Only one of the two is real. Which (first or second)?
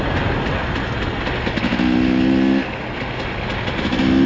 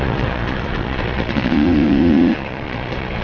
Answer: first